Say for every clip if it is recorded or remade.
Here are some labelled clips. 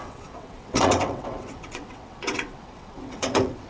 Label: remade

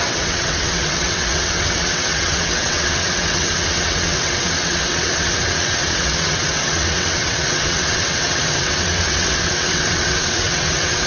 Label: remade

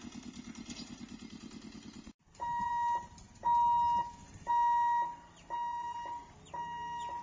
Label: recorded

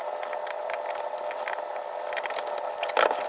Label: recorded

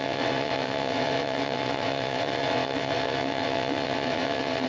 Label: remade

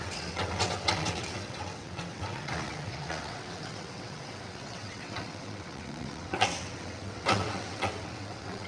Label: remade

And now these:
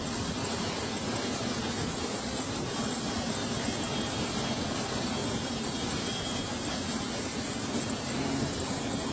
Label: recorded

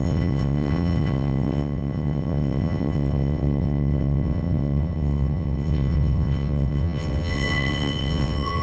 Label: remade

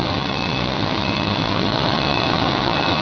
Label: remade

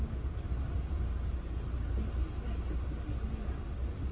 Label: recorded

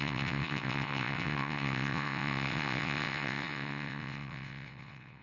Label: remade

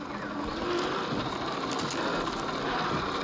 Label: recorded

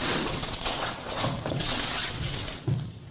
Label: remade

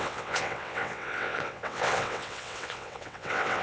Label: remade